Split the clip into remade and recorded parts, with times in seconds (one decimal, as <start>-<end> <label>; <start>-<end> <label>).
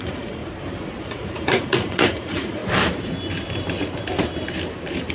0.0-0.4 remade; 0.4-1.0 recorded; 1.0-2.6 remade; 2.6-5.1 recorded